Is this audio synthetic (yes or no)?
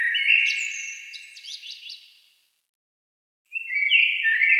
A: no